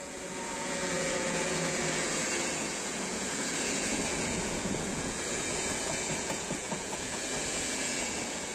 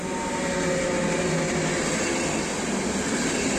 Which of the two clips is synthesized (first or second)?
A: first